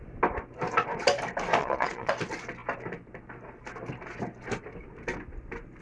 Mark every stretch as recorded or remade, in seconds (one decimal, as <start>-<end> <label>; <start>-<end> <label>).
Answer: 0.0-1.6 recorded; 1.6-2.1 remade; 2.1-5.8 recorded